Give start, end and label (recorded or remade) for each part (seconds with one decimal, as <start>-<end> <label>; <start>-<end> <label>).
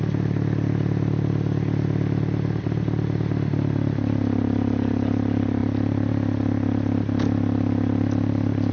0.0-8.7 recorded